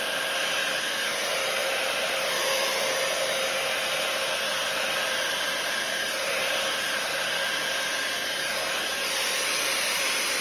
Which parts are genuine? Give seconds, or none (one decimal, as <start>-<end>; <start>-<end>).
none